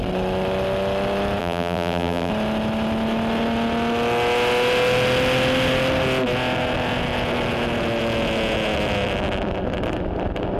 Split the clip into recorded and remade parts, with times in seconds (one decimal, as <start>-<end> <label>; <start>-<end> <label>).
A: 0.0-1.4 recorded; 1.4-2.3 remade; 2.3-10.6 recorded